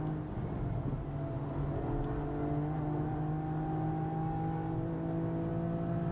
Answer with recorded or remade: recorded